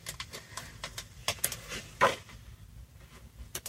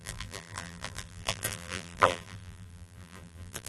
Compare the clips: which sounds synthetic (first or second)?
second